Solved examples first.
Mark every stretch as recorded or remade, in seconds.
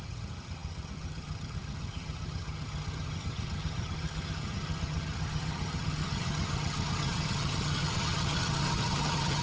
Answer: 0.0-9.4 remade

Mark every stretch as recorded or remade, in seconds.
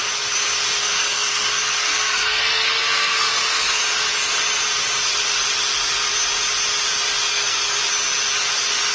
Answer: 0.0-0.8 recorded; 0.8-3.8 remade; 3.8-7.3 recorded; 7.3-7.8 remade; 7.8-8.9 recorded